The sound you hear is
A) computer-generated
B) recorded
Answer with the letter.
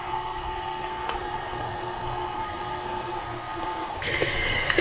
A